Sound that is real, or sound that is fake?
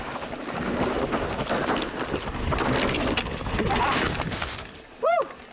real